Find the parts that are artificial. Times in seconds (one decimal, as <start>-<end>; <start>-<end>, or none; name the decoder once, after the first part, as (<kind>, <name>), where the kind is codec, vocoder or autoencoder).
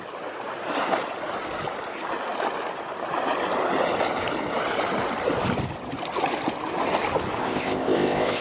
7.4-8.4 (codec, ZipCodec)